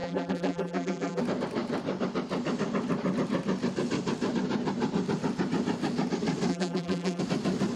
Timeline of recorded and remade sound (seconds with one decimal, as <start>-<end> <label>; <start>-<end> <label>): 0.0-1.2 remade; 1.2-6.5 recorded; 6.5-7.2 remade; 7.2-7.8 recorded